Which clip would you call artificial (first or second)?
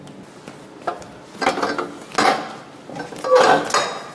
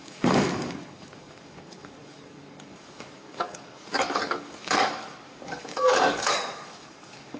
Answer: second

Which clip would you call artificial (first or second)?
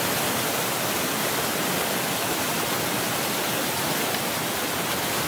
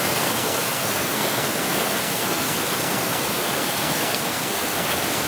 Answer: second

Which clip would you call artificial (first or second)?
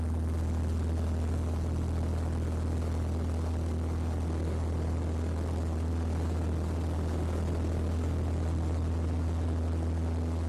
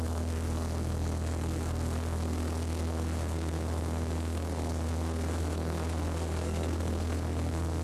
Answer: second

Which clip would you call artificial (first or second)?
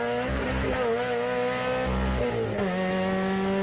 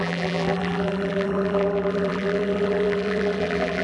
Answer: second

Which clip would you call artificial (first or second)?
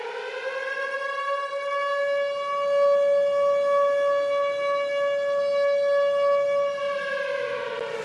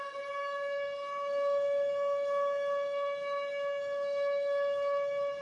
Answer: second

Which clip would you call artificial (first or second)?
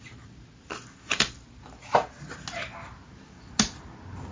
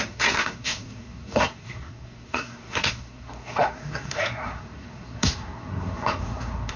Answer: second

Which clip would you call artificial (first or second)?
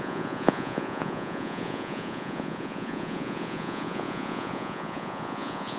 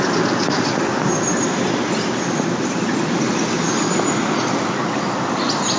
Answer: first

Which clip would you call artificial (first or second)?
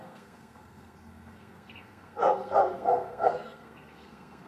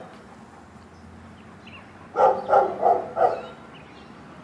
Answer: first